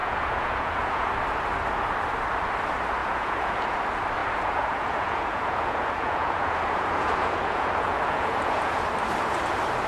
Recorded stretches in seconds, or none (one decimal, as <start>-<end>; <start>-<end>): 1.1-3.0; 3.8-4.2; 8.8-9.9